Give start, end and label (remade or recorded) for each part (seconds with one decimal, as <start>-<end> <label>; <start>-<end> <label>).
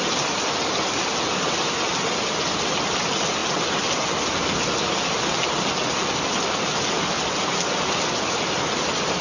0.0-9.2 recorded